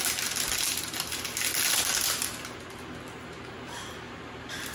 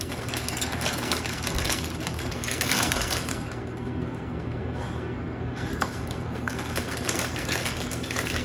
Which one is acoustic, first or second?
first